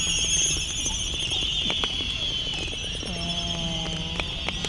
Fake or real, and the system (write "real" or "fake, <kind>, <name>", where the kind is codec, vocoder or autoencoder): real